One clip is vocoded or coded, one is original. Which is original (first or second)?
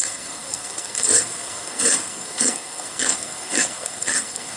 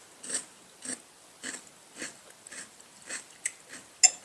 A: second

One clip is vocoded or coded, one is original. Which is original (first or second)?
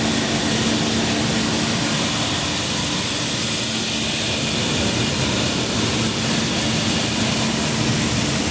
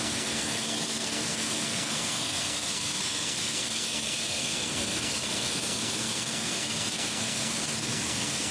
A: first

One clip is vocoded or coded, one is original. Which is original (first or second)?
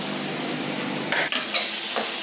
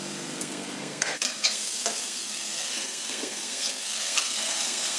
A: first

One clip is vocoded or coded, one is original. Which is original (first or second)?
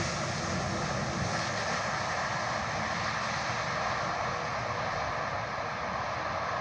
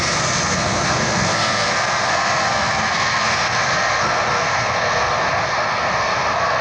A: first